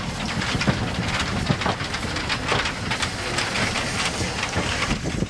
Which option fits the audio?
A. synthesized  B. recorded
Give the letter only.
A